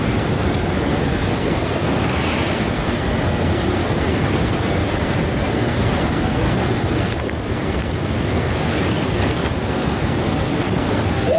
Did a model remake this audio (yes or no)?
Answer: yes